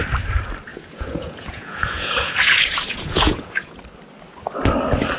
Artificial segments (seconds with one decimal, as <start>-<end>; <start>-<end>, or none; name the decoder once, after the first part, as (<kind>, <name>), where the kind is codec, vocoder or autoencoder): 0.7-3.8 (vocoder, Vocos)